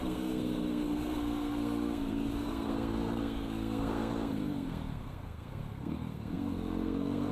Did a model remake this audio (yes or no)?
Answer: yes